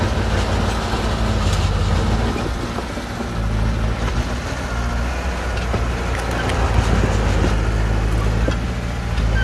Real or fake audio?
real